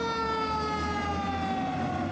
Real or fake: real